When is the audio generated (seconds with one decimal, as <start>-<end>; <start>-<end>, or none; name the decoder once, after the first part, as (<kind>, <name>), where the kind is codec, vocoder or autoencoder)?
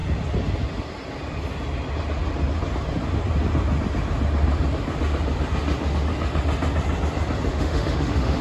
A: 7.5-8.4 (autoencoder, DAC-VAE)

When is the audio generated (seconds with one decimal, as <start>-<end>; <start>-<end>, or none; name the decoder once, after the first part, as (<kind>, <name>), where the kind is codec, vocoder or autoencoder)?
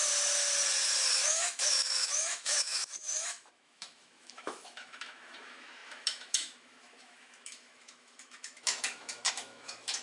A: 1.1-10.0 (autoencoder, DAC-VAE)